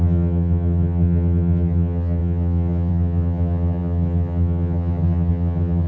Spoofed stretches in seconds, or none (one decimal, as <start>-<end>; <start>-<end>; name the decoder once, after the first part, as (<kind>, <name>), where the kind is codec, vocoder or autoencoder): 0.0-5.9 (vocoder, HiFi-GAN)